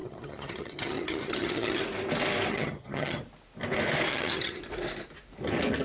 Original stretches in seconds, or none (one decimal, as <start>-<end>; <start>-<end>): 1.8-2.5; 3.2-4.1; 4.6-5.8